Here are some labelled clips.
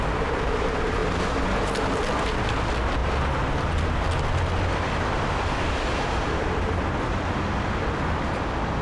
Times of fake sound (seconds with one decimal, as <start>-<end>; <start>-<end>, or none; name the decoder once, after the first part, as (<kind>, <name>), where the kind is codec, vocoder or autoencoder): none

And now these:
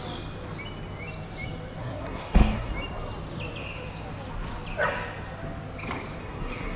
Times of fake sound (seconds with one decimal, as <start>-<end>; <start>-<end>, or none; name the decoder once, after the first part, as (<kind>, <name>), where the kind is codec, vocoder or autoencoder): 1.8-2.7 (codec, SNAC); 6.2-6.8

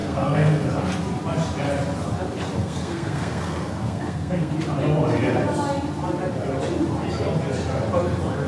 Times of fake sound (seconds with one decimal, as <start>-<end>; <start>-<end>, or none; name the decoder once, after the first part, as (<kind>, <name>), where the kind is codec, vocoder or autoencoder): 0.0-0.7 (codec, SNAC); 2.6-4.5

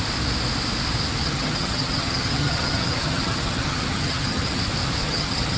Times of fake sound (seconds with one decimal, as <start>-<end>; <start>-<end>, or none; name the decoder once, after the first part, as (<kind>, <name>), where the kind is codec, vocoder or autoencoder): 1.2-4.6 (vocoder, HiFi-GAN); 5.0-5.6